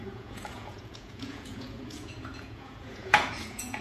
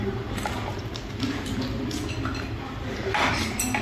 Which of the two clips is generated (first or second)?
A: first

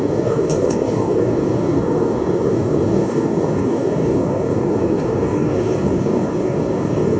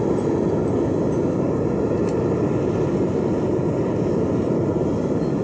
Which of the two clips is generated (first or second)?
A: first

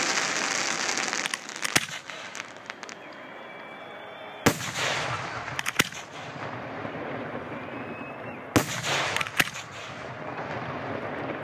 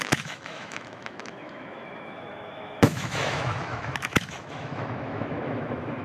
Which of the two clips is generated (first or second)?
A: second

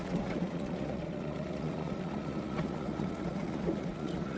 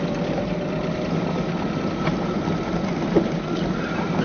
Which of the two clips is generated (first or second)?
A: first